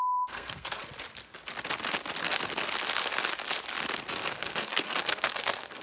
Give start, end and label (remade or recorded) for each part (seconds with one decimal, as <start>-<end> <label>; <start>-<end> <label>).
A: 0.0-0.8 remade; 0.8-4.3 recorded; 4.3-5.8 remade